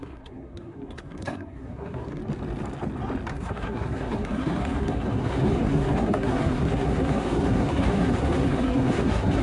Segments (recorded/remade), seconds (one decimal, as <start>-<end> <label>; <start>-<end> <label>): 0.0-2.2 remade; 2.2-3.3 recorded; 3.3-9.4 remade